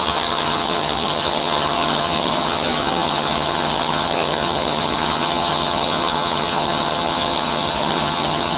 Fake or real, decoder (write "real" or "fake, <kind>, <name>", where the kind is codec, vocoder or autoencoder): fake, vocoder, HiFi-GAN